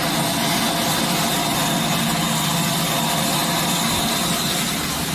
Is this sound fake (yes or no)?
no